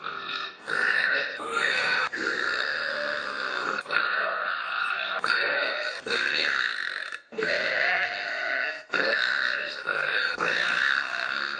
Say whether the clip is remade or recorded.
remade